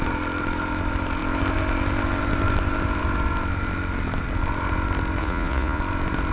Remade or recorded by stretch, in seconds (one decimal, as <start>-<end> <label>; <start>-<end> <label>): 0.0-5.2 recorded; 5.2-5.8 remade; 5.8-6.3 recorded